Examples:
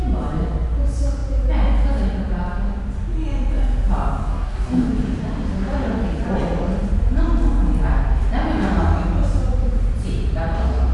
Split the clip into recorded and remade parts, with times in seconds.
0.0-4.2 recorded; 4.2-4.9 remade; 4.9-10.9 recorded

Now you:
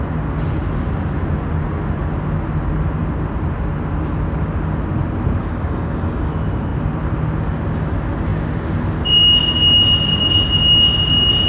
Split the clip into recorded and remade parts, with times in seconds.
0.0-5.4 recorded; 5.4-6.3 remade; 6.3-11.5 recorded

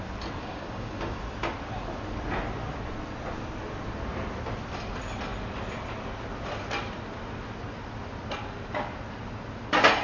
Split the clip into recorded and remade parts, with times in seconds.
0.0-0.4 recorded; 0.4-1.2 remade; 1.2-10.0 recorded

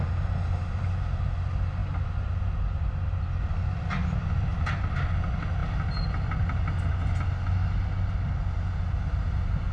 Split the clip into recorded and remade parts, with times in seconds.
0.0-9.7 recorded